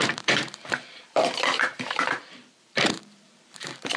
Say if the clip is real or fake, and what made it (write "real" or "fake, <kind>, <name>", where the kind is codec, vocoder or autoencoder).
fake, vocoder, BigVGAN v2